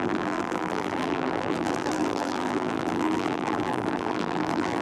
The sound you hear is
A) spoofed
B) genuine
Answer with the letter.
A